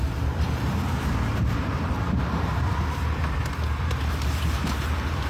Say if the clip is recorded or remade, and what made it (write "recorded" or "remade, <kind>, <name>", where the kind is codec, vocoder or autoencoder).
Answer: remade, vocoder, BigVGAN v2